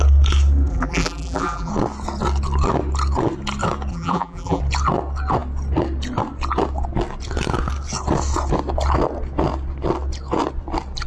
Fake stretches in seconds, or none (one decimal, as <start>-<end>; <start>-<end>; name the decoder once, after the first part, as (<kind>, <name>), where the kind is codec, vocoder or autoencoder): 0.7-1.7 (vocoder, BigVGAN v2); 3.9-4.6